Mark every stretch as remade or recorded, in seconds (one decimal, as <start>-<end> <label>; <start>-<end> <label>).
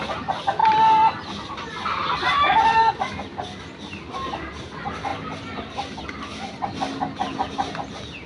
0.0-8.3 recorded